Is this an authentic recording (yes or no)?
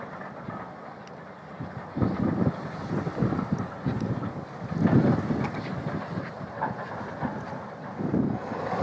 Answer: yes